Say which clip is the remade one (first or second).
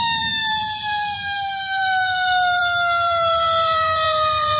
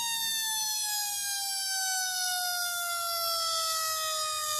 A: first